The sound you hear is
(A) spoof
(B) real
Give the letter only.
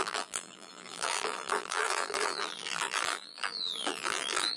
A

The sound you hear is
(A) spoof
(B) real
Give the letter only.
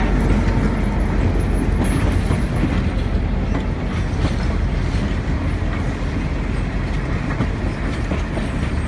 B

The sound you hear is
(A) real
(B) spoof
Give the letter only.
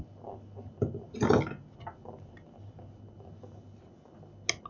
A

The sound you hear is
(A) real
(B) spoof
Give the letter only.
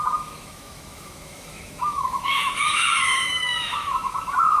B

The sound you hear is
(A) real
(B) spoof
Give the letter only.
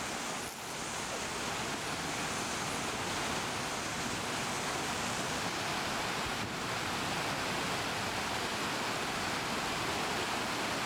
A